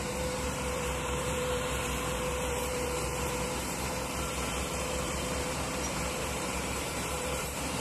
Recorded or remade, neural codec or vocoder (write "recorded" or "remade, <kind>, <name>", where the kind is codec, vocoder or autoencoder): remade, vocoder, BigVGAN v2